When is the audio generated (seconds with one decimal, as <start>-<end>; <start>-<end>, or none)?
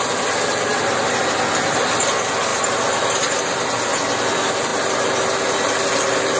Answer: none